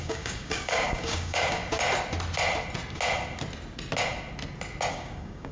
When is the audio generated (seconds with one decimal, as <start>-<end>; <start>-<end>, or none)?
0.0-1.6; 4.9-5.5